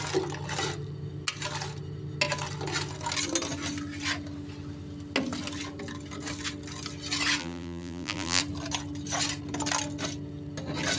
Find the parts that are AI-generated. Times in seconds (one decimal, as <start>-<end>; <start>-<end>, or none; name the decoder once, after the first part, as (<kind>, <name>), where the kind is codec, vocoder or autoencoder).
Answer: 7.4-8.4 (vocoder, BigVGAN v2)